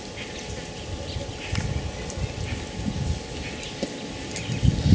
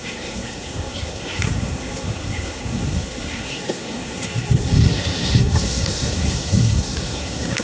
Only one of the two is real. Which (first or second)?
first